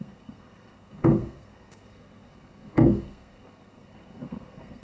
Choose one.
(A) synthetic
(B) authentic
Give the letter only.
A